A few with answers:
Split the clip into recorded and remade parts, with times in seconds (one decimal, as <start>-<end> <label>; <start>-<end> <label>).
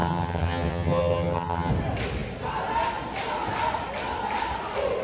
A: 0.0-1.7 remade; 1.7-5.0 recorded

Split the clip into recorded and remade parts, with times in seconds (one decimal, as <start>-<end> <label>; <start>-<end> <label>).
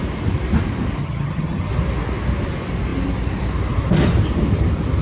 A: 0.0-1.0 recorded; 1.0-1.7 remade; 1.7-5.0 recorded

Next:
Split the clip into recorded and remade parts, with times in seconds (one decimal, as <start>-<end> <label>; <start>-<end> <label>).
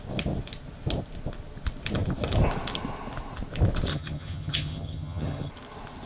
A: 0.0-3.9 recorded; 3.9-5.5 remade; 5.5-6.1 recorded